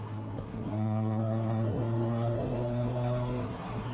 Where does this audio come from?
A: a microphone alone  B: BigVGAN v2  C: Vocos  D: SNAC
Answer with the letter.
D